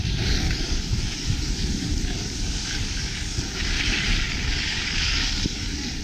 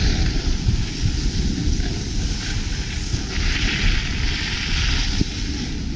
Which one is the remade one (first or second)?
first